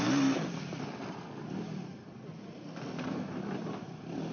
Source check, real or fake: real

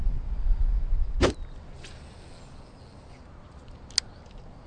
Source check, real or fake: real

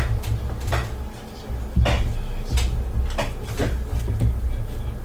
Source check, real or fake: real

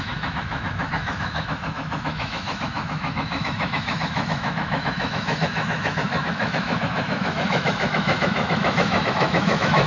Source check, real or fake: fake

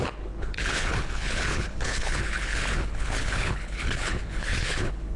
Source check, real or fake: fake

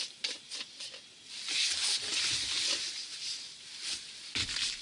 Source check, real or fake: real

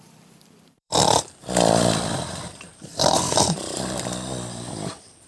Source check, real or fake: fake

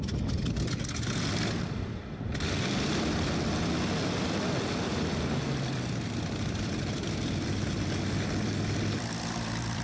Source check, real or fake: fake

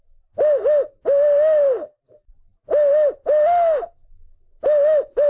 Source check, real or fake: real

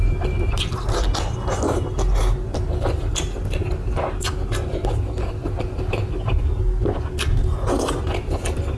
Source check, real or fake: real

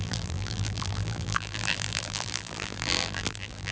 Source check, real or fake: fake